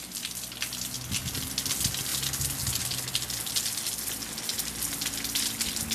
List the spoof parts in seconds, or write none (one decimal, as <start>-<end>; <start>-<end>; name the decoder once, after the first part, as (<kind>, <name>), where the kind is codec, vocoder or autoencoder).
none